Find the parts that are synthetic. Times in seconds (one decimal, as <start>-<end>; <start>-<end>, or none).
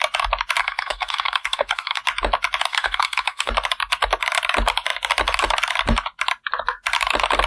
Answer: 0.6-2.0; 2.7-3.5